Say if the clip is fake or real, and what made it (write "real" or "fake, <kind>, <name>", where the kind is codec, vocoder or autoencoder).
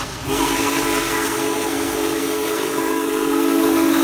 fake, codec, SNAC